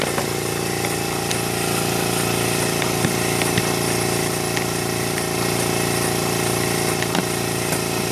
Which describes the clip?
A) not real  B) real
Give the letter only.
B